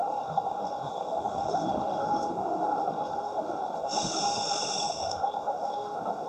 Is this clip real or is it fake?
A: fake